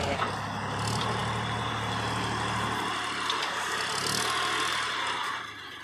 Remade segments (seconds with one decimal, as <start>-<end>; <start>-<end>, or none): none